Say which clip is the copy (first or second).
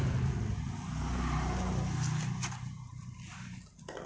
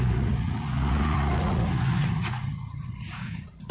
second